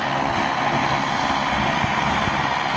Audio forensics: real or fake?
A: real